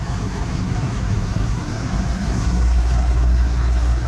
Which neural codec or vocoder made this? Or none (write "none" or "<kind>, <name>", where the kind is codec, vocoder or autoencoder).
codec, SNAC